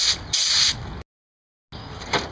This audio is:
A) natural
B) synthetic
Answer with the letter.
A